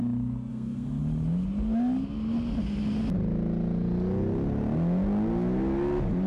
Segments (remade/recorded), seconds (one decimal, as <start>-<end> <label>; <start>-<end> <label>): 0.0-0.5 recorded; 0.5-1.0 remade; 1.0-6.3 recorded